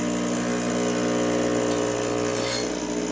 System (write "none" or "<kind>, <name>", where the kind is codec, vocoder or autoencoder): none